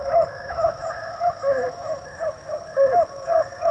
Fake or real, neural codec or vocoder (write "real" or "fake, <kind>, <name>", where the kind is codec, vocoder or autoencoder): fake, autoencoder, DAC-VAE